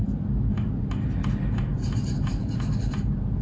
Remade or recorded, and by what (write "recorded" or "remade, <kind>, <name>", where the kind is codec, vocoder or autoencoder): recorded